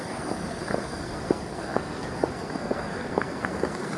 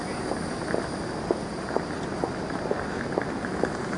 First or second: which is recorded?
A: second